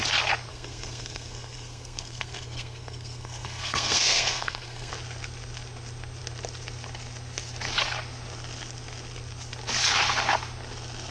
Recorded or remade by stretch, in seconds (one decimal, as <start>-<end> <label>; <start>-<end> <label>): 0.0-0.5 recorded; 0.5-4.9 remade; 4.9-11.1 recorded